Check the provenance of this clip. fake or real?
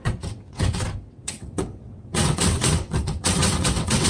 fake